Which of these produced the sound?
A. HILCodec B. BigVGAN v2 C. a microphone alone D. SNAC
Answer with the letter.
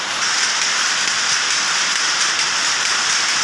C